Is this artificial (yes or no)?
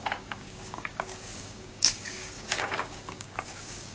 yes